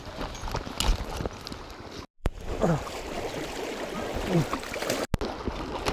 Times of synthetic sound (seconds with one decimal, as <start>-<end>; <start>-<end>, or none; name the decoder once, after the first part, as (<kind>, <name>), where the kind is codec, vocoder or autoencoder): 2.2-2.9 (vocoder, BigVGAN v2)